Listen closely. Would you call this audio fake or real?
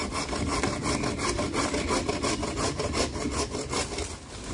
real